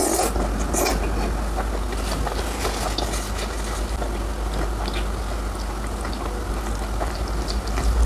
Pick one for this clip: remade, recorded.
recorded